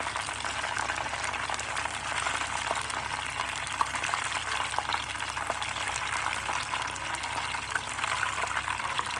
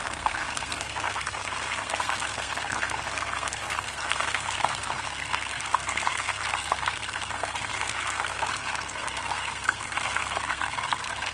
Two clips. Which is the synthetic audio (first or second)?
second